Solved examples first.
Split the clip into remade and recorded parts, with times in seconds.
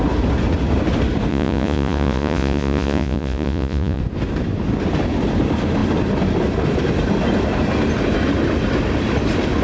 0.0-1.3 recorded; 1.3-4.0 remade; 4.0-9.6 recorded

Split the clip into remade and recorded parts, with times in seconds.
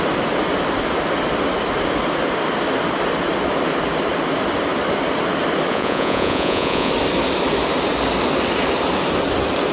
0.0-5.7 recorded; 5.7-6.9 remade; 6.9-9.7 recorded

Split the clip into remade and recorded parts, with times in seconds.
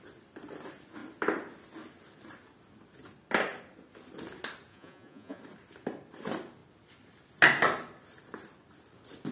0.0-4.7 recorded; 4.7-5.4 remade; 5.4-9.3 recorded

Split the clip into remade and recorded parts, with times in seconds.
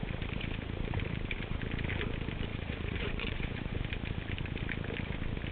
0.0-2.5 recorded; 2.5-3.8 remade; 3.8-5.5 recorded